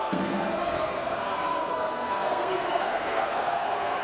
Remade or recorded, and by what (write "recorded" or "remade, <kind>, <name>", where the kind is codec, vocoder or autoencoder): remade, codec, SNAC